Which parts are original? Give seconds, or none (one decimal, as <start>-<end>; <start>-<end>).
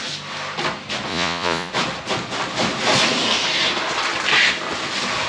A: 0.0-1.1; 1.7-5.3